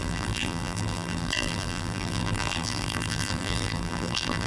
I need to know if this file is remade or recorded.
remade